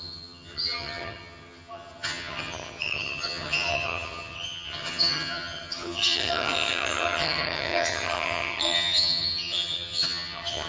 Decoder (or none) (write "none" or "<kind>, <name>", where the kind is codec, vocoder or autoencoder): vocoder, HiFi-GAN